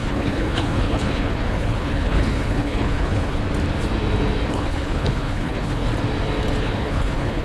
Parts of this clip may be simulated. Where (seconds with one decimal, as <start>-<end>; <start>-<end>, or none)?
0.0-3.4; 4.5-5.9; 6.6-7.4